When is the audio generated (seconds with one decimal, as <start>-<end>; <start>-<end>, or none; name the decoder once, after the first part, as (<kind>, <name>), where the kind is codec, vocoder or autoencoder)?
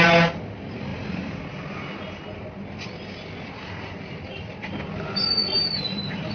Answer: none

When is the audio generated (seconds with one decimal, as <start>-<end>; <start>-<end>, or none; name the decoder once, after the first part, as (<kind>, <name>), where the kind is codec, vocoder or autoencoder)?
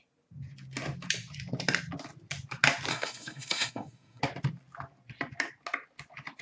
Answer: 2.9-4.2 (codec, SNAC)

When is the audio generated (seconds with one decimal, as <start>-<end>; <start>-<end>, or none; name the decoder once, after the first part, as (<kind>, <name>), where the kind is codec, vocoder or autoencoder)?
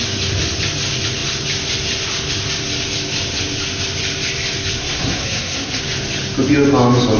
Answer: 4.8-5.8 (codec, SNAC)